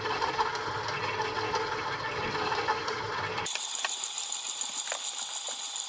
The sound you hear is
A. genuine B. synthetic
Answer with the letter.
B